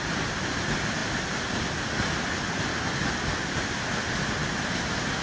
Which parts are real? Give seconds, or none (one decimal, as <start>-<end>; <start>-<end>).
0.0-5.2